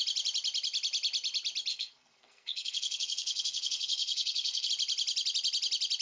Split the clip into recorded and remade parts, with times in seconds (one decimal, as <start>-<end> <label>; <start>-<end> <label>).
0.0-1.7 recorded; 1.7-4.7 remade; 4.7-6.0 recorded